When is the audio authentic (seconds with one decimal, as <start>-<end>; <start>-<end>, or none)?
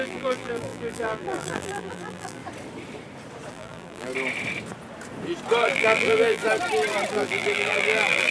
2.4-3.5; 4.1-5.6; 6.4-7.1